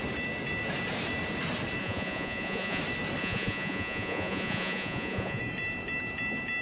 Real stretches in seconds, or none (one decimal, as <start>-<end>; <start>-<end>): 0.0-1.8; 2.8-3.2; 5.4-6.6